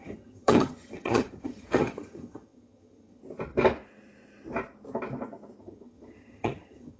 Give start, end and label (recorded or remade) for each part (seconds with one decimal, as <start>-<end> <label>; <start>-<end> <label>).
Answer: 0.0-3.2 remade; 3.2-5.6 recorded; 5.6-7.0 remade